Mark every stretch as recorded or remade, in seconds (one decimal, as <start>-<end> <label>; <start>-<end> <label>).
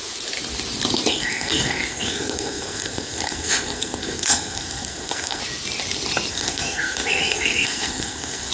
0.0-1.1 recorded; 1.1-5.4 remade; 5.4-6.3 recorded; 6.3-8.5 remade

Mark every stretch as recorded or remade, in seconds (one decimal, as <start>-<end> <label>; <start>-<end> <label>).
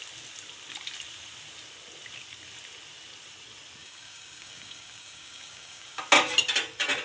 0.0-3.8 recorded; 3.8-6.0 remade; 6.0-7.0 recorded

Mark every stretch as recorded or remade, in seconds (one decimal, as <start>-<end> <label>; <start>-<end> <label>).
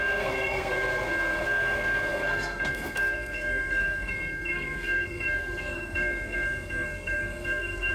0.0-7.9 remade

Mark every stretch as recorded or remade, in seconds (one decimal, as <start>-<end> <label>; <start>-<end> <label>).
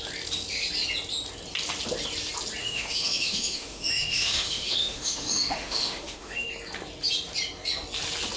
0.0-2.6 recorded; 2.6-6.5 remade; 6.5-8.4 recorded